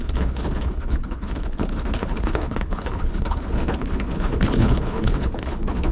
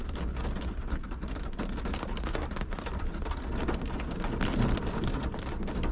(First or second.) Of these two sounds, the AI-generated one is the first